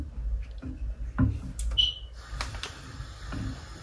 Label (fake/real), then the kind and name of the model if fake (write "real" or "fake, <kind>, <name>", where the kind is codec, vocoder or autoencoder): real